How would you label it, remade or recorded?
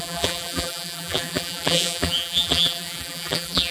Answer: remade